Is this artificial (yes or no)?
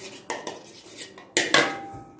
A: no